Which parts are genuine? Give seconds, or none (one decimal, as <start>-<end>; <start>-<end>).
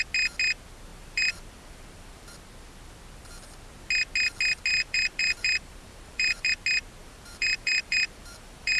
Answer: 0.0-0.9; 2.3-4.7; 6.5-7.0